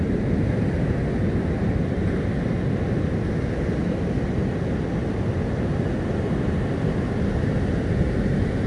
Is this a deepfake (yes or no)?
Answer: no